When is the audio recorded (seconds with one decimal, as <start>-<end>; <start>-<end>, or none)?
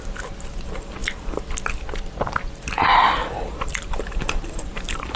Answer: 0.0-3.2